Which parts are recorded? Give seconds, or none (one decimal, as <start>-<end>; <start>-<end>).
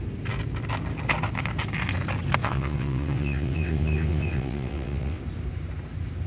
0.0-2.4; 5.2-6.3